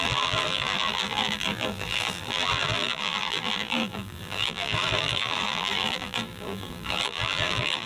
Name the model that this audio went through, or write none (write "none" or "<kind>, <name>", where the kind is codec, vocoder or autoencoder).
vocoder, BigVGAN v2